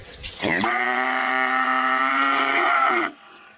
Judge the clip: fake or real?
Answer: fake